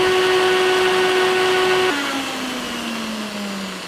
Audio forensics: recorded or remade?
recorded